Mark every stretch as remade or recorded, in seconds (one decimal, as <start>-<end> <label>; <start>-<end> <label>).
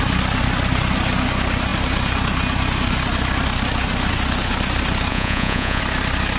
0.0-5.1 recorded; 5.1-5.8 remade; 5.8-6.4 recorded